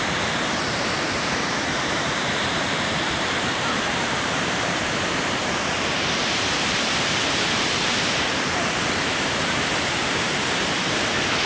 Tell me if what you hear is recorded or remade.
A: remade